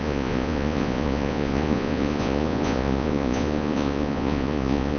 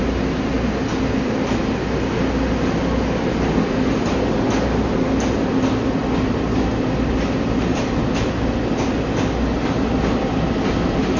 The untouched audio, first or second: second